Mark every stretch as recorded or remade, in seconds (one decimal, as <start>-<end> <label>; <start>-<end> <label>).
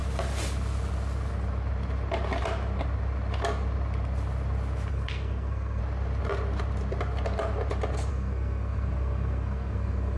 0.0-4.9 recorded; 4.9-5.8 remade; 5.8-8.1 recorded; 8.1-10.2 remade